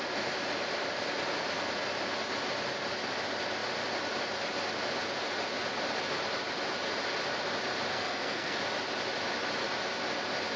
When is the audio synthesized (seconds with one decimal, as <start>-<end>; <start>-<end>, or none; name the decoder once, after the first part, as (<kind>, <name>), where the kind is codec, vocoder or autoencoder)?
7.9-8.6 (codec, SNAC)